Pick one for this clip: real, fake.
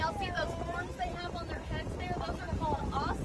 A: real